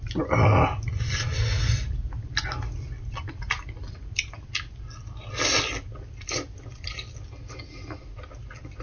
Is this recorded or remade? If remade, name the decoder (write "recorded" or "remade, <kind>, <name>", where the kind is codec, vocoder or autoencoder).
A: recorded